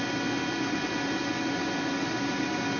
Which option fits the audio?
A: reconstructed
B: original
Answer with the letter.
B